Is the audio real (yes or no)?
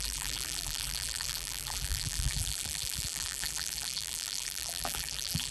no